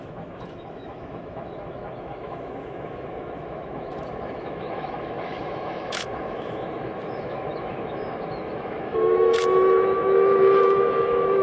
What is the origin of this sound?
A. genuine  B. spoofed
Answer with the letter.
B